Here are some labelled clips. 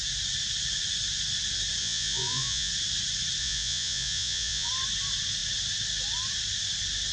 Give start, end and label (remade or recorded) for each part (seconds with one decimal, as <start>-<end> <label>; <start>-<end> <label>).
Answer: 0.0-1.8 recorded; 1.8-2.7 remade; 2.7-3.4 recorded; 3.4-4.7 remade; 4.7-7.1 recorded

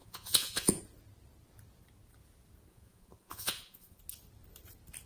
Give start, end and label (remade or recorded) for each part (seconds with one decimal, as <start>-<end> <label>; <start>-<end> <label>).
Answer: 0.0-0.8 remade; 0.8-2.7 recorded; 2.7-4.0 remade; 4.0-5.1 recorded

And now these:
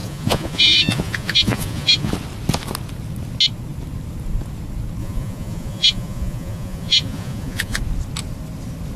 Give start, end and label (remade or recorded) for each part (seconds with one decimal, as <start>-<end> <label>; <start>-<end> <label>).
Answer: 0.0-2.1 remade; 2.1-5.0 recorded; 5.0-7.8 remade; 7.8-9.0 recorded

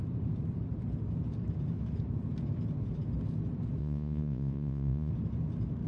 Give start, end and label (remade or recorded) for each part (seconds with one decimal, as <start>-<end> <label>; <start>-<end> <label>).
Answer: 0.0-3.8 recorded; 3.8-5.1 remade; 5.1-5.9 recorded